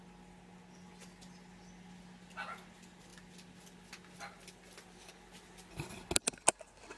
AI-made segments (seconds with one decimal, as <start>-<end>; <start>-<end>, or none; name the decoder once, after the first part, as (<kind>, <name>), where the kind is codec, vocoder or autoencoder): none